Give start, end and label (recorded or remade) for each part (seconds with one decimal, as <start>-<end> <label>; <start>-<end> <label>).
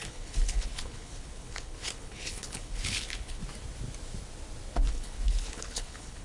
0.0-3.4 remade; 3.4-4.9 recorded; 4.9-6.2 remade